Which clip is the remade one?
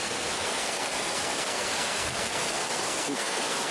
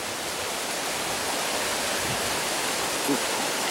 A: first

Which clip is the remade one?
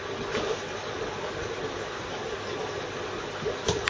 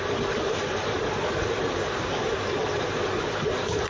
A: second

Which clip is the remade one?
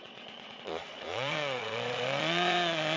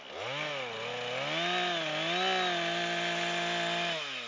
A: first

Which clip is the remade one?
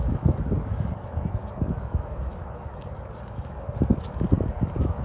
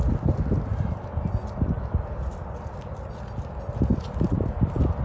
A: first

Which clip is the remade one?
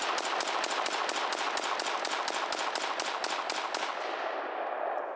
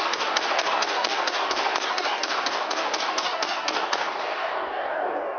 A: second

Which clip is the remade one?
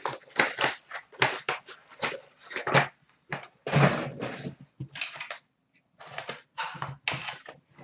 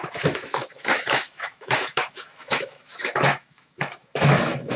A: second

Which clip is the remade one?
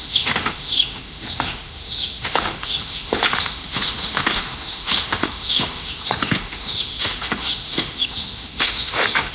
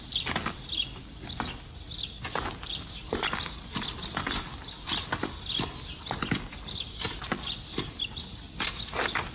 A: first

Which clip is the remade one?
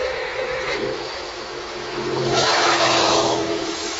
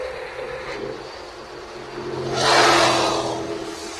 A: first